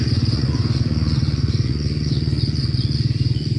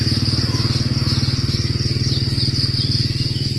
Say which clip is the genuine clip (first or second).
second